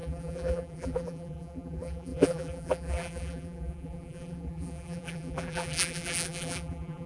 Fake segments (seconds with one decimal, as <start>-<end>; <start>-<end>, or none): 0.0-7.1